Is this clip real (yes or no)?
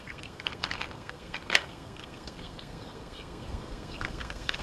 no